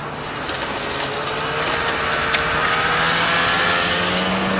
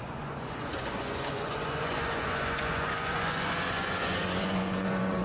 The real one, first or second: first